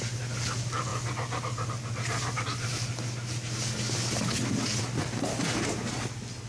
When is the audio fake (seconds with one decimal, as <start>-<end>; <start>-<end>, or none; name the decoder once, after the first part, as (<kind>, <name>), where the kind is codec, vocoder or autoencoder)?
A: none